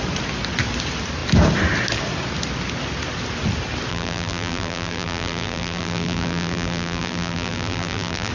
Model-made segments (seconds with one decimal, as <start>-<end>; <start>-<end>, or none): 3.9-8.3